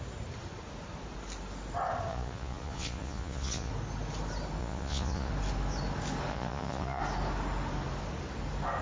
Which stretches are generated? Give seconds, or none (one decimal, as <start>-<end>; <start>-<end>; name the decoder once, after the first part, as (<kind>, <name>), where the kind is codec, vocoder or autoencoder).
2.1-3.7 (vocoder, Vocos); 4.6-5.3; 6.3-7.0